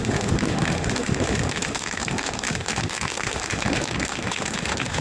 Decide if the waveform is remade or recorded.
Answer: remade